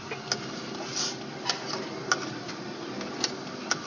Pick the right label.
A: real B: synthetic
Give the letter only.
A